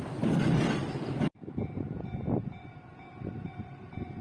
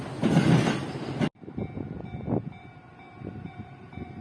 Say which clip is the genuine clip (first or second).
second